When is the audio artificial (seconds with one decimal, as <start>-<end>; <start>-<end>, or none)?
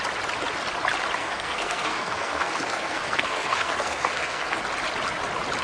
1.2-4.6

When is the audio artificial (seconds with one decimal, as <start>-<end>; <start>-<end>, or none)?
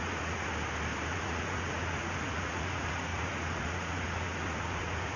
0.0-0.5; 1.1-5.2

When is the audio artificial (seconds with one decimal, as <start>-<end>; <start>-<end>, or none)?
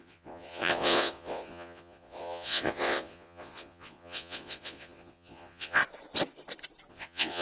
0.0-5.8; 6.9-7.4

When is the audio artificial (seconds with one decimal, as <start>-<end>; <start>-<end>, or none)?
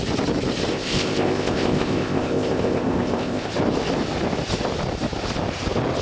0.7-3.5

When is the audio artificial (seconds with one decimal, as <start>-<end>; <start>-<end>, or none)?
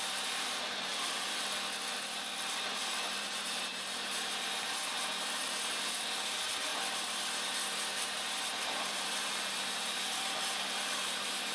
0.0-0.9; 3.2-6.7; 7.4-11.5